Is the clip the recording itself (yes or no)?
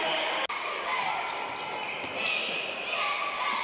yes